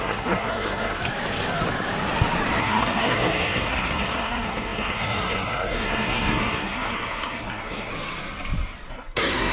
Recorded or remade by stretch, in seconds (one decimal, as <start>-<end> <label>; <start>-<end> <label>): 0.0-1.0 remade; 1.0-2.6 recorded; 2.6-7.9 remade; 7.9-8.9 recorded; 8.9-9.5 remade